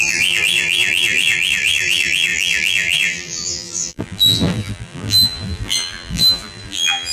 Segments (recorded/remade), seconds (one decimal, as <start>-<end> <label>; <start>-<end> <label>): 0.0-7.1 remade

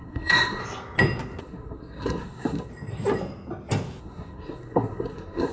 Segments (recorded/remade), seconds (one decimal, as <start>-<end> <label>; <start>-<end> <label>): 0.0-0.6 remade; 0.6-1.4 recorded; 1.4-2.7 remade; 2.7-4.0 recorded; 4.0-5.5 remade

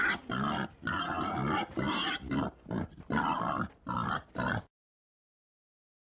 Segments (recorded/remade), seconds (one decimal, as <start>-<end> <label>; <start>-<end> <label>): 0.0-4.5 recorded; 4.5-6.1 remade

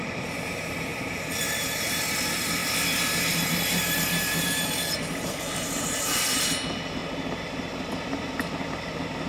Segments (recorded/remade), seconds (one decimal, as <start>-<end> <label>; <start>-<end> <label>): 0.0-2.6 remade; 2.6-3.3 recorded; 3.3-7.0 remade; 7.0-9.3 recorded

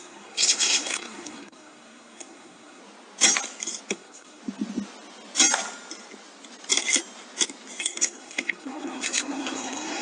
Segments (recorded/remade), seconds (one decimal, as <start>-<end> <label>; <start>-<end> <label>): 0.0-2.8 remade; 2.8-3.9 recorded; 3.9-4.4 remade; 4.4-7.8 recorded; 7.8-10.0 remade

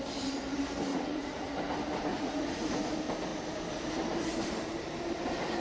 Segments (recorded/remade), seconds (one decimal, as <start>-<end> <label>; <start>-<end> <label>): 0.0-0.9 recorded; 0.9-1.5 remade; 1.5-2.1 recorded; 2.1-2.7 remade; 2.7-5.6 recorded

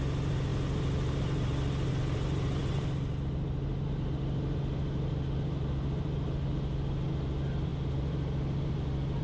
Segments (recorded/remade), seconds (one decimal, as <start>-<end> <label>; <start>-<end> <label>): 0.0-9.2 recorded